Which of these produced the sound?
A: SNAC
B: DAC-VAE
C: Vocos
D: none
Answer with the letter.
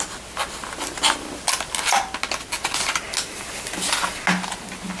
D